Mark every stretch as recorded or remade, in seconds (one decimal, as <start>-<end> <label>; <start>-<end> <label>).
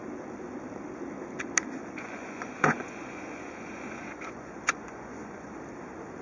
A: 0.0-1.8 recorded; 1.8-5.5 remade; 5.5-6.2 recorded